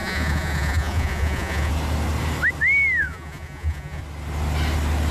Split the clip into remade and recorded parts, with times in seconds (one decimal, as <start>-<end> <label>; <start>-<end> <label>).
0.0-1.7 remade; 1.7-3.0 recorded; 3.0-4.0 remade; 4.0-5.1 recorded